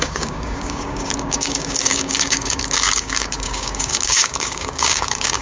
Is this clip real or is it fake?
fake